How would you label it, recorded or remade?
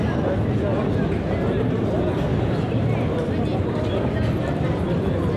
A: recorded